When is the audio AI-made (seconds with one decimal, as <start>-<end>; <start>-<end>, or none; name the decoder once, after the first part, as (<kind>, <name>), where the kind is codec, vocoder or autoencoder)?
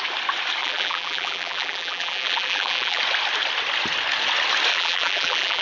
0.6-3.0 (vocoder, BigVGAN v2); 4.7-5.6